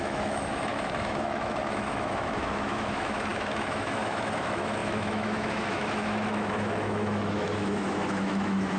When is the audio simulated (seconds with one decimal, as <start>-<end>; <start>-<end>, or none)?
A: 0.0-8.8